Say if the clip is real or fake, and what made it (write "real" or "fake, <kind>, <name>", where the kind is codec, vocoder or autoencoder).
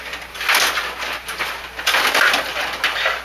real